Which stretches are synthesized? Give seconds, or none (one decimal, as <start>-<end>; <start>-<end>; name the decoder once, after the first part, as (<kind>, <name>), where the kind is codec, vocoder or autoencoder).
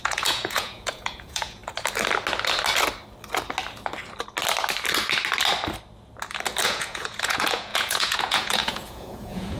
0.0-1.6 (vocoder, Vocos); 6.6-9.6